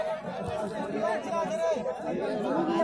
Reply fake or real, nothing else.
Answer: real